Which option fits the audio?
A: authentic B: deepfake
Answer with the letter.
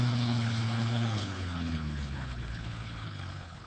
B